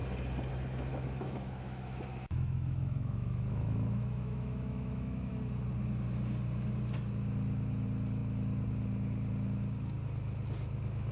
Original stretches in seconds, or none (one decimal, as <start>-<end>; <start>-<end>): 0.0-0.9; 5.3-11.1